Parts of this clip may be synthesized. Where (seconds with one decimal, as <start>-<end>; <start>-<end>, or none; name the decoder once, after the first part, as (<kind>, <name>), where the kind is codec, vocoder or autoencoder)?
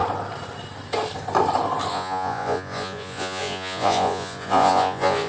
1.9-5.3 (vocoder, Vocos)